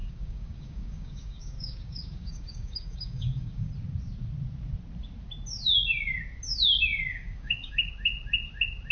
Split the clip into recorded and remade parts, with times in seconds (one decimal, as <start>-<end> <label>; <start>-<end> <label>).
0.0-3.7 remade; 3.7-7.1 recorded; 7.1-7.9 remade; 7.9-8.9 recorded